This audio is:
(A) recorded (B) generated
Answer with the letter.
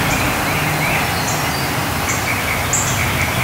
A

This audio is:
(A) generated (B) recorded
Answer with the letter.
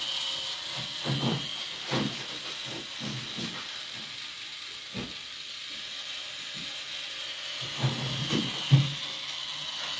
B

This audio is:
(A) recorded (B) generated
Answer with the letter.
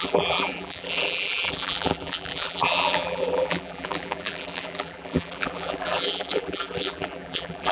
B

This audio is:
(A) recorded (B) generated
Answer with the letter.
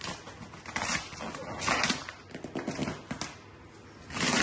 A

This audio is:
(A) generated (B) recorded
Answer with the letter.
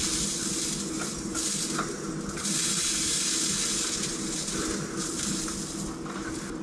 B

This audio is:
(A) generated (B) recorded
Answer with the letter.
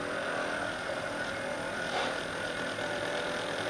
B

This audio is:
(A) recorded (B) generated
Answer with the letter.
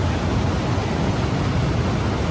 A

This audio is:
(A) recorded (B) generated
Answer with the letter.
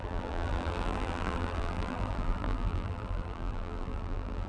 B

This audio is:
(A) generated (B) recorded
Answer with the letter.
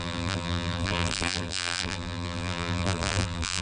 A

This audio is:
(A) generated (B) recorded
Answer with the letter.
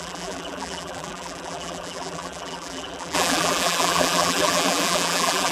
A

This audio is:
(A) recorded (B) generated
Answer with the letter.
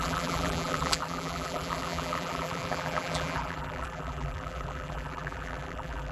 B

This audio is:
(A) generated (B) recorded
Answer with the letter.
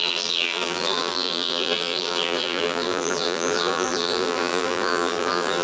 A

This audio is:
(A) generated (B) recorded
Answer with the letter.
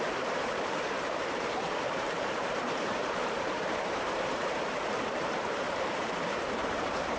A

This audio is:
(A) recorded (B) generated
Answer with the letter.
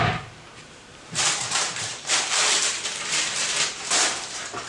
B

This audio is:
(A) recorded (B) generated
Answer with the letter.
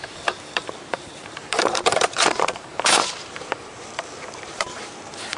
B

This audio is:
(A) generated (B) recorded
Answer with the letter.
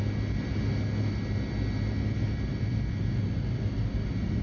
B